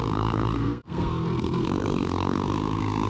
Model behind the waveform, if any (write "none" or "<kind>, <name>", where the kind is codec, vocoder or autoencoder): codec, SNAC